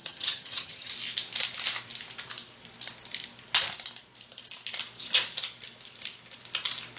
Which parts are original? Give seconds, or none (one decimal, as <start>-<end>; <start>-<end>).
0.9-7.0